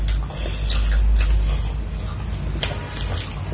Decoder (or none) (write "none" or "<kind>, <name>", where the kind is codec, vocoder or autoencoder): none